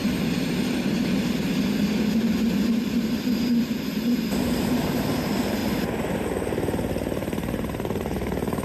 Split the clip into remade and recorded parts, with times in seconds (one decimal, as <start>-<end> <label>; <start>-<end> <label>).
0.0-2.8 recorded; 2.8-5.6 remade; 5.6-6.9 recorded; 6.9-8.6 remade